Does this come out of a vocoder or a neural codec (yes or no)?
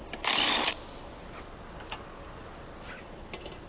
no